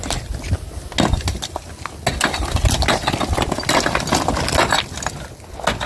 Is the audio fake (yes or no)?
no